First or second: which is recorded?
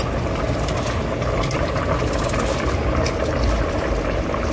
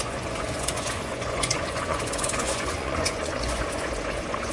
first